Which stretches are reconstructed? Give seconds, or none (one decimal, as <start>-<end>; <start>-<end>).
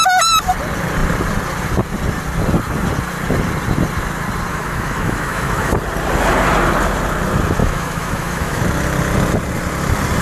4.5-5.7; 7.6-8.6